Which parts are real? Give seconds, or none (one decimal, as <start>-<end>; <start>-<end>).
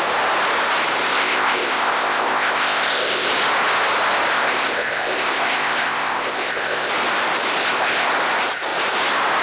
0.0-1.1; 3.3-4.3; 6.9-7.6; 8.1-9.4